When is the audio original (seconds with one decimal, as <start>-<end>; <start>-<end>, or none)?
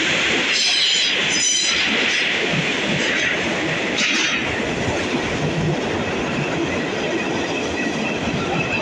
0.6-1.2; 4.3-8.2